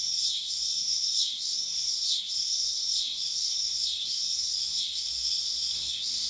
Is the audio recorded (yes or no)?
no